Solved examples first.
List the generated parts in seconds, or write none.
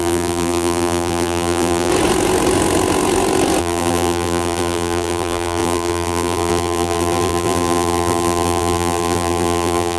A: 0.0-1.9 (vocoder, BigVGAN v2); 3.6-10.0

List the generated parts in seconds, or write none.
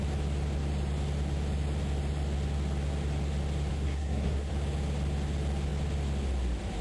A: 3.7-4.5 (codec, SNAC)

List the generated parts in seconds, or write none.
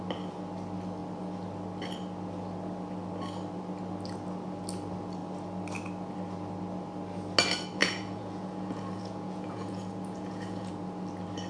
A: 7.8-10.7 (vocoder, Vocos)